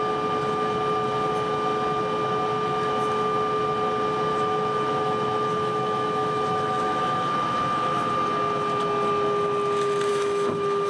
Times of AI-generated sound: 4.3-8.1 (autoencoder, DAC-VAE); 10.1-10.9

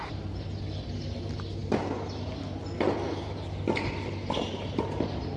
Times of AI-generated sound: none